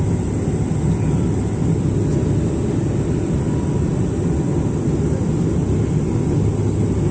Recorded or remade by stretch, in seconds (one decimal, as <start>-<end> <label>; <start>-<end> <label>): 0.0-7.1 recorded